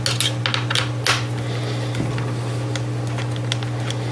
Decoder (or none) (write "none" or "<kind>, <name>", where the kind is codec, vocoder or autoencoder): none